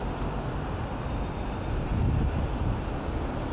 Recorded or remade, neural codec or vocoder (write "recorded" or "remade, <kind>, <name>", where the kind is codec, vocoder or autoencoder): recorded